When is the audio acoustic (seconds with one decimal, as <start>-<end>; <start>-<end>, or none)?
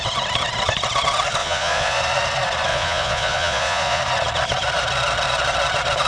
0.0-1.4; 2.0-2.7; 4.0-6.1